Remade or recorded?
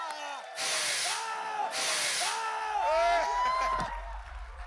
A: recorded